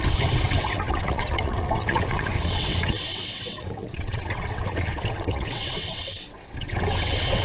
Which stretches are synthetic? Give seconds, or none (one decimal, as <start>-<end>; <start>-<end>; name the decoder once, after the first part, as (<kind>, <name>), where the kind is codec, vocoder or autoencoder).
0.0-7.4 (vocoder, WaveNeXt)